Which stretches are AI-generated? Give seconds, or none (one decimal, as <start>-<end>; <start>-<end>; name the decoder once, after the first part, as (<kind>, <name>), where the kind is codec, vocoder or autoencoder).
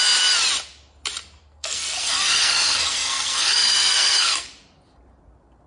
1.4-4.5 (codec, SNAC)